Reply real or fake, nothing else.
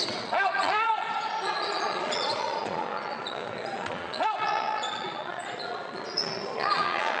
fake